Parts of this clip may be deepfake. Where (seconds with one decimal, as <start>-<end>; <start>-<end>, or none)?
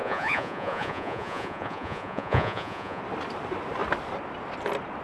0.0-3.0